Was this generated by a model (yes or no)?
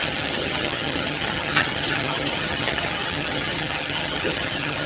yes